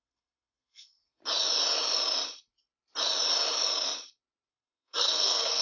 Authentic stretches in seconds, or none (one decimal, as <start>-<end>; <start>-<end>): 1.2-4.5